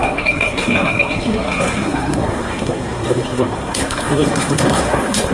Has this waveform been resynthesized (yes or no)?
yes